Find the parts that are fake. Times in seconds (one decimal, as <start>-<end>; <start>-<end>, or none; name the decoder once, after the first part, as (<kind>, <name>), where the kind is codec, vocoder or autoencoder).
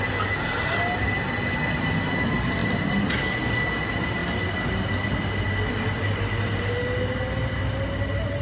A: none